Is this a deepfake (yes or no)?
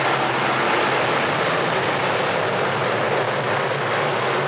no